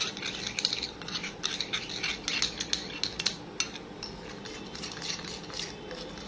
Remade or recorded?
recorded